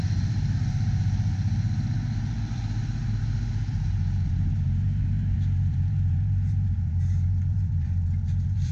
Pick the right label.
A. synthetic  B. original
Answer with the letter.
A